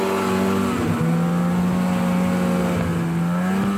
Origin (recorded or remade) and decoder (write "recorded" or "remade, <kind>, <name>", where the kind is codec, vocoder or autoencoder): recorded